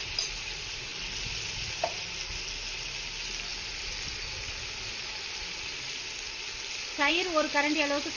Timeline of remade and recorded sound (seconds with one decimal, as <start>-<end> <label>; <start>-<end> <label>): 0.0-8.2 recorded